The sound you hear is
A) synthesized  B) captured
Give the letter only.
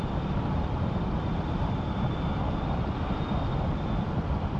A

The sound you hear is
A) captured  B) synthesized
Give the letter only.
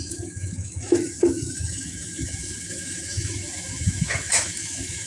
B